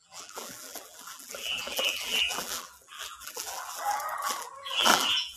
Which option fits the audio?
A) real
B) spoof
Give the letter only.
B